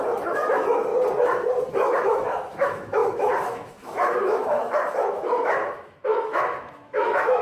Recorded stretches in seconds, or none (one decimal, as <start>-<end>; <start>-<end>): 0.9-1.7